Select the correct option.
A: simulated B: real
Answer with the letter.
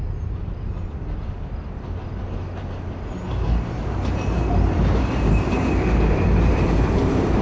B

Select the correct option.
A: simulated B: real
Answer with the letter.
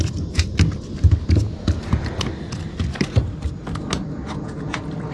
B